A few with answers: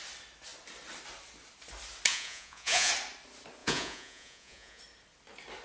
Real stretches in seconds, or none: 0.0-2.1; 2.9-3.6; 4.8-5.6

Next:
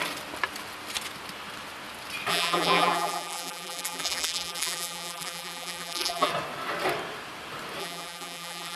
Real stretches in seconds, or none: 0.0-2.3; 6.3-7.8

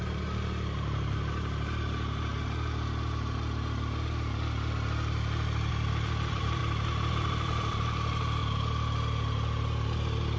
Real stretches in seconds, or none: 2.3-5.7; 6.6-7.1; 8.4-10.4

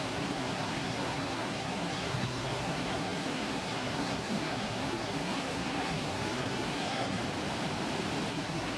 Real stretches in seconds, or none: 7.2-8.3